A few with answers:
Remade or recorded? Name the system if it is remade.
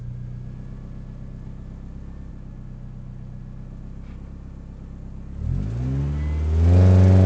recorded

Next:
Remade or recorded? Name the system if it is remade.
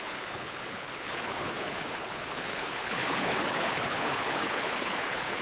remade, codec, HILCodec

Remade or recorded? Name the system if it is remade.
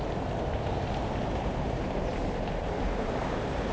remade, vocoder, BigVGAN v2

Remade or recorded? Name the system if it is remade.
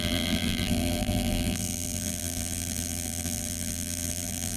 remade, vocoder, BigVGAN v2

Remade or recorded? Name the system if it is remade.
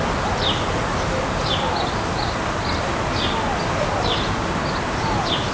recorded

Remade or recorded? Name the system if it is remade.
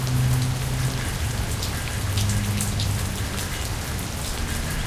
recorded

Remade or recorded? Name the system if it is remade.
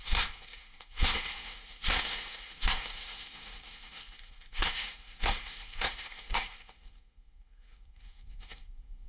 remade, codec, SNAC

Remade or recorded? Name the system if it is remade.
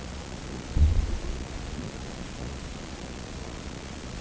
remade, vocoder, Vocos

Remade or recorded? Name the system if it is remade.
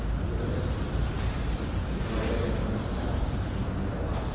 recorded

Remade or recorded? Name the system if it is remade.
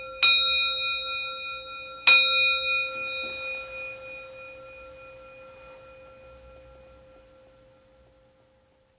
recorded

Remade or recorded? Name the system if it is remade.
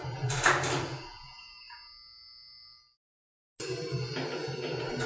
recorded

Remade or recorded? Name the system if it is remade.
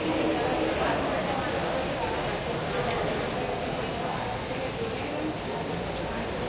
recorded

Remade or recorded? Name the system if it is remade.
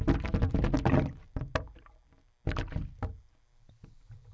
recorded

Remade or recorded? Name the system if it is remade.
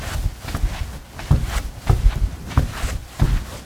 recorded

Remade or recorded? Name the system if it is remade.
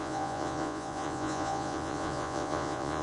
remade, vocoder, Vocos